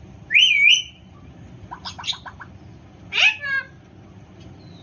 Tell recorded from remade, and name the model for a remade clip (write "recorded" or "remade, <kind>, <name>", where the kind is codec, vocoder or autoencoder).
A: recorded